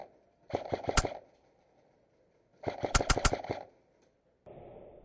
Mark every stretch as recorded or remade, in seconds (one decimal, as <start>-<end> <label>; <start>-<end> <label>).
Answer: 0.0-5.0 recorded